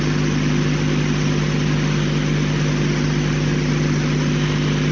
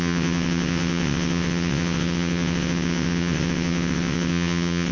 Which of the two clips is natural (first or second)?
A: first